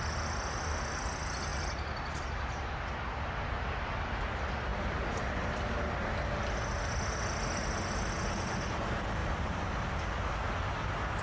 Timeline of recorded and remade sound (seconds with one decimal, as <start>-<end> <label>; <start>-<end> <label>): 0.0-11.2 recorded